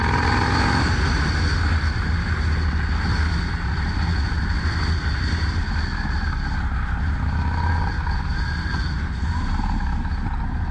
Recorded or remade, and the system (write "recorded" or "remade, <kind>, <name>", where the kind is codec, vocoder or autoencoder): recorded